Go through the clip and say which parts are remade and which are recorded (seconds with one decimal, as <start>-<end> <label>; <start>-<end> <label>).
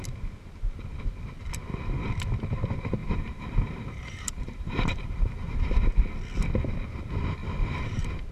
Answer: 0.0-3.0 recorded; 3.0-5.9 remade; 5.9-7.4 recorded; 7.4-8.3 remade